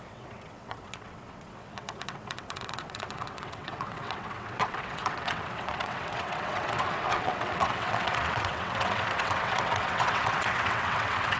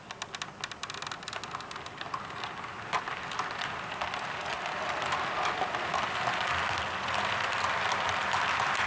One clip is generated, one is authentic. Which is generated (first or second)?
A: first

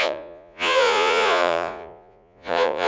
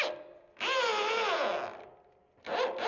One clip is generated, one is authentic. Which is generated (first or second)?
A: first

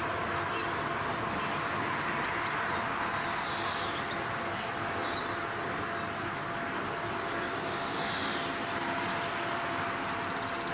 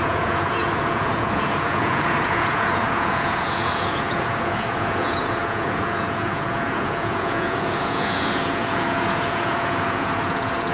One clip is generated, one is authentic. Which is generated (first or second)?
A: second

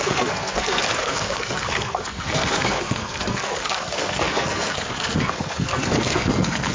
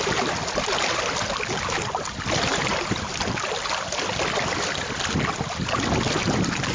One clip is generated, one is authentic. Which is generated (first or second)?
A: first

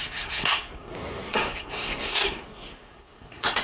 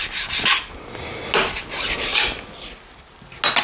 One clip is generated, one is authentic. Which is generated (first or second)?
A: first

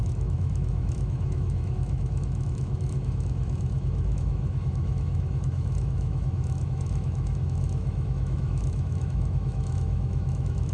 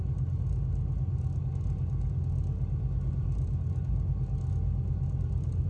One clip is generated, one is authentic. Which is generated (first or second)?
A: first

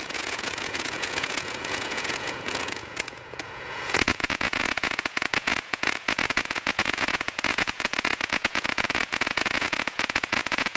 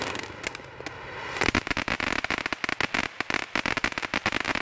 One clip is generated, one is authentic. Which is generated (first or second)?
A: first